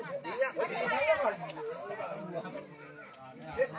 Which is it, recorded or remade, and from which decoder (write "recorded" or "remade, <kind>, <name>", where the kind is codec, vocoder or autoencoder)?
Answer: recorded